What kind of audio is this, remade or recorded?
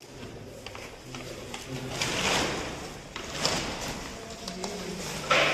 recorded